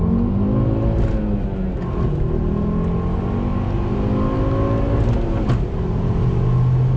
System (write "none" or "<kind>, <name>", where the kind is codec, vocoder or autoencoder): none